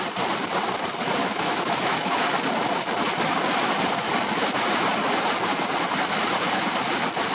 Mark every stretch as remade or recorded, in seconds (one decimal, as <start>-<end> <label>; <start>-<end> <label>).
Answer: 0.0-1.2 recorded; 1.2-2.2 remade; 2.2-7.3 recorded